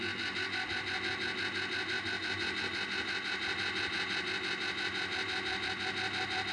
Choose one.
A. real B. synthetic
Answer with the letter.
A